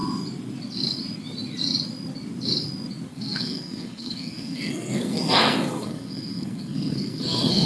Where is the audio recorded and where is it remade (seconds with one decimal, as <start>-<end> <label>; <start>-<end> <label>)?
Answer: 0.0-3.1 recorded; 3.1-7.7 remade